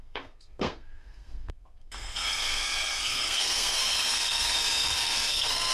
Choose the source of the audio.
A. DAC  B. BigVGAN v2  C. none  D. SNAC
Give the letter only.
D